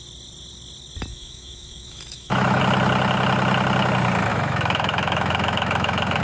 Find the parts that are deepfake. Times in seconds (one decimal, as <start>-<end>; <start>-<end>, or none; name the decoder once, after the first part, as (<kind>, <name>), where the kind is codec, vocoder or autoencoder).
1.1-2.6 (autoencoder, DAC-VAE); 4.3-6.2